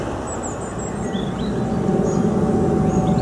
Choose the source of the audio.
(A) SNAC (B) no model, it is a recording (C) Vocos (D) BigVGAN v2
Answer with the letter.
B